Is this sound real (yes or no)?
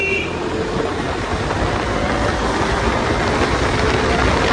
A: yes